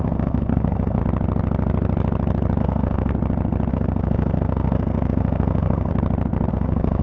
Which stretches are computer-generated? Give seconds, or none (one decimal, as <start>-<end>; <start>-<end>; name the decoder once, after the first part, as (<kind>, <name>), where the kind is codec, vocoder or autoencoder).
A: 0.0-1.0 (codec, SNAC); 2.6-3.1; 3.7-5.9; 6.5-7.0